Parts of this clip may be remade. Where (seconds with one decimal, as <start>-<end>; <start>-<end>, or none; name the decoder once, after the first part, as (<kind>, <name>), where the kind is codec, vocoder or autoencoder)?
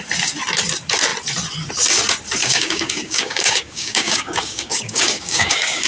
2.4-5.9 (codec, DAC)